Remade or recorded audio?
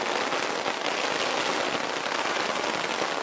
recorded